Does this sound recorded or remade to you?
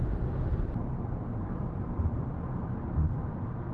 recorded